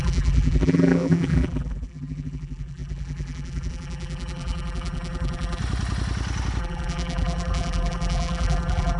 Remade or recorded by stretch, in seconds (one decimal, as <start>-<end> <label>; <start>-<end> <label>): 0.0-5.6 remade; 5.6-6.6 recorded; 6.6-9.0 remade